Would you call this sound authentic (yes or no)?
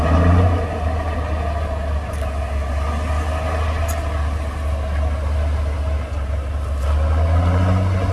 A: yes